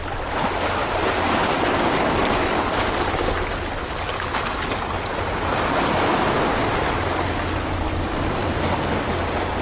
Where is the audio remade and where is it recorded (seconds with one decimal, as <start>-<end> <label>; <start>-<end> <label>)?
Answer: 0.0-0.8 recorded; 0.8-1.5 remade; 1.5-8.4 recorded; 8.4-9.1 remade; 9.1-9.6 recorded